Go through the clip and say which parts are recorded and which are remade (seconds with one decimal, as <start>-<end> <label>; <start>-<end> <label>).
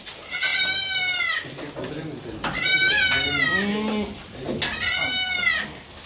0.0-6.1 recorded